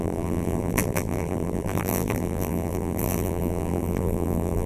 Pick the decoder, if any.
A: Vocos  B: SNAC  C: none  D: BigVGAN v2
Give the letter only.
D